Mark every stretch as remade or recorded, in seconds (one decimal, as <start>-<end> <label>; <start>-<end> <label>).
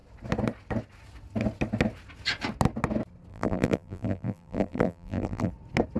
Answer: 0.0-3.3 recorded; 3.3-5.5 remade; 5.5-6.0 recorded